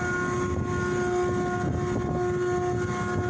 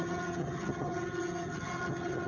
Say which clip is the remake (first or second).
second